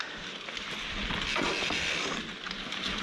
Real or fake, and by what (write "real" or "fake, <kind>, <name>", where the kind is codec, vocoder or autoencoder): real